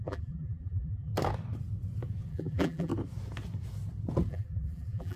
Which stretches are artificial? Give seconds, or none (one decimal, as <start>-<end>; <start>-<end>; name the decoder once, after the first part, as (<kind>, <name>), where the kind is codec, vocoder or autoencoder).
0.0-1.1 (vocoder, BigVGAN v2); 2.3-2.9; 4.3-5.2